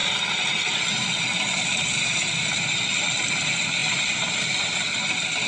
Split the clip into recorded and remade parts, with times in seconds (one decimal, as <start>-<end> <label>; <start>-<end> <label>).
0.0-5.5 recorded